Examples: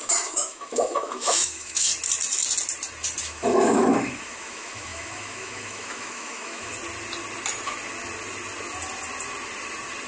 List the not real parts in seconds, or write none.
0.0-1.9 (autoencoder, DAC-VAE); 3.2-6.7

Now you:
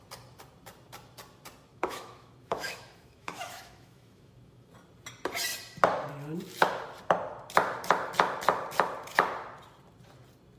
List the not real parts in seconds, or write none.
1.7-4.7 (autoencoder, DAC-VAE)

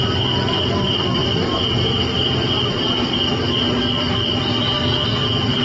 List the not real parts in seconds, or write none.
none